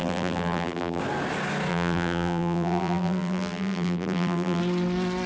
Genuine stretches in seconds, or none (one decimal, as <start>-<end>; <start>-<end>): 1.0-1.7; 4.6-5.3